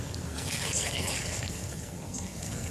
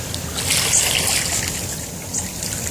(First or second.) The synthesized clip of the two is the first